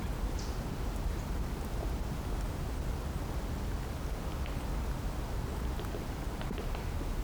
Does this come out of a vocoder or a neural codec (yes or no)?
no